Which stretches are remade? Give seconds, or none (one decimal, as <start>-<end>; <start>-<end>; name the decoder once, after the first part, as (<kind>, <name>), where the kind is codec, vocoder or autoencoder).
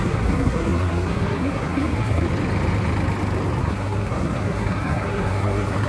0.0-2.3 (codec, SNAC); 3.6-5.9